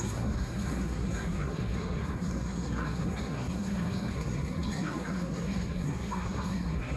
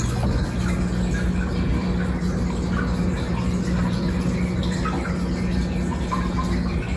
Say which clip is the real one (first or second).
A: second